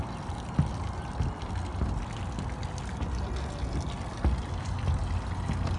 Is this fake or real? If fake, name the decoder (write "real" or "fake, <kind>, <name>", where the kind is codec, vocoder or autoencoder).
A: real